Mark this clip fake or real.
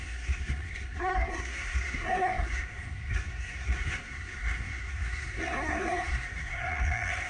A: fake